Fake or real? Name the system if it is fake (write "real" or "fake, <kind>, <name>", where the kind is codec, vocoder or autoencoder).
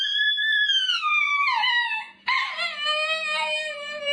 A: real